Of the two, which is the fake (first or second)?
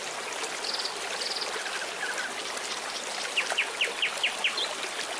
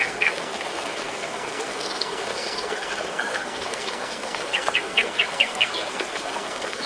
second